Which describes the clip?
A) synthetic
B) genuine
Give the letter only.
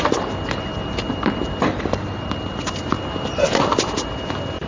B